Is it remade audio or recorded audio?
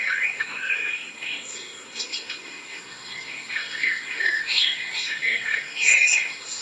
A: remade